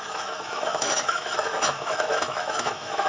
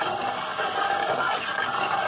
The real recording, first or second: second